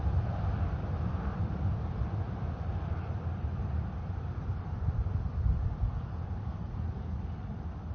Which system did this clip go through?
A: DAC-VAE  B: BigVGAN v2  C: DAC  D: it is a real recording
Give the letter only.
B